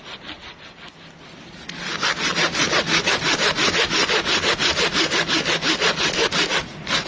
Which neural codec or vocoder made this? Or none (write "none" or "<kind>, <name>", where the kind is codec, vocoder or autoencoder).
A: none